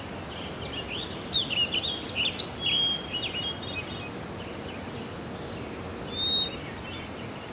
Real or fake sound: real